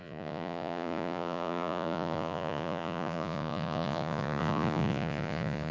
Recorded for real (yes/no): no